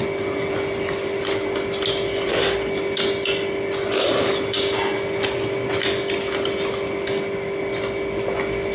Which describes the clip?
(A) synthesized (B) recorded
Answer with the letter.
B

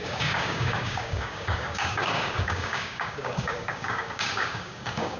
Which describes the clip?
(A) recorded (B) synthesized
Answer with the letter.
B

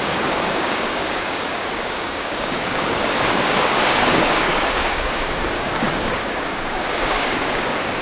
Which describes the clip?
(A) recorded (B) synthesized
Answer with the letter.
B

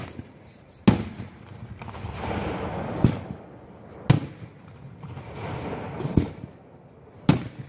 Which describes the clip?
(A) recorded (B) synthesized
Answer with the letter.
A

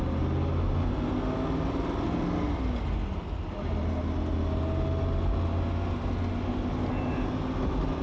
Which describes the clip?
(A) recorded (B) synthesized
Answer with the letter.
A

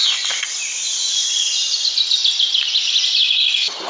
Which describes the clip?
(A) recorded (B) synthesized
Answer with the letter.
A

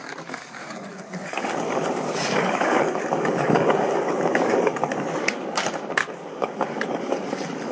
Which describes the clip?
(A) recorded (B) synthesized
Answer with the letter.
B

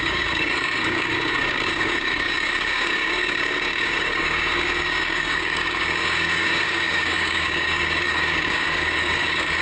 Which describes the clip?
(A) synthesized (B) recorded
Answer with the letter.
A